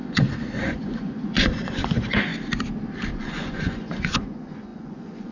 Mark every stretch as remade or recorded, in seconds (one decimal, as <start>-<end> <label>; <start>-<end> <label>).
0.0-2.3 remade; 2.3-3.1 recorded; 3.1-5.3 remade